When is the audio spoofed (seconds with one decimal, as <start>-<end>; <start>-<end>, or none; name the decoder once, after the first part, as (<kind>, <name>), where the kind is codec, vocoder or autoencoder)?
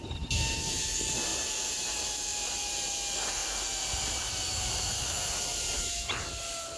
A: none